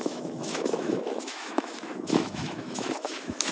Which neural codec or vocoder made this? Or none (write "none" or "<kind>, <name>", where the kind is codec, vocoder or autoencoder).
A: autoencoder, DAC-VAE